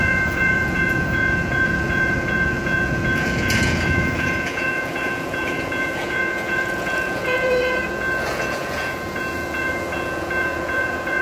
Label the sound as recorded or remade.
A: remade